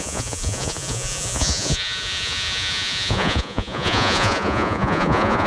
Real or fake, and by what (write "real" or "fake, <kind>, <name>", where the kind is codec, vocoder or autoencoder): fake, vocoder, Vocos